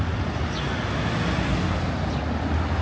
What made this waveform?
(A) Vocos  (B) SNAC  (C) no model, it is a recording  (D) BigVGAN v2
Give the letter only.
C